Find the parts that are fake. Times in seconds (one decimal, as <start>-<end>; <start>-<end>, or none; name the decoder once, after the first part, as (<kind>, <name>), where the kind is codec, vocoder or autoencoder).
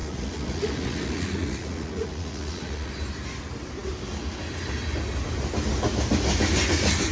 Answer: 0.0-2.9 (vocoder, Vocos)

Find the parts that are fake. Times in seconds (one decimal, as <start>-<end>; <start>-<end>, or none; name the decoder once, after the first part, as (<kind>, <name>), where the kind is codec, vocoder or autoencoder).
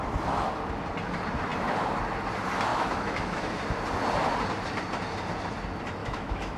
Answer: 2.7-3.6 (autoencoder, DAC-VAE); 6.0-6.6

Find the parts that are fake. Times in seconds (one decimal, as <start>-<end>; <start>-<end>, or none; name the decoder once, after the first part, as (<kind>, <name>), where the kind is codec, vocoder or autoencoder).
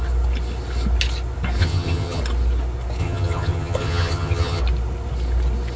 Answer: 1.6-2.2 (vocoder, HiFi-GAN); 3.0-4.6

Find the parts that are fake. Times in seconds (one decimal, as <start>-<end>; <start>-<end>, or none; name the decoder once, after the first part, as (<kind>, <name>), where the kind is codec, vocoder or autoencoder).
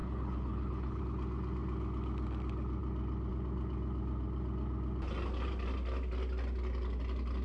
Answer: 0.0-1.0 (codec, HILCodec)